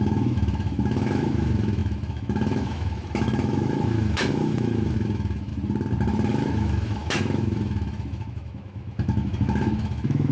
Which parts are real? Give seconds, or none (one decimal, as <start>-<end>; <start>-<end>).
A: 5.5-6.3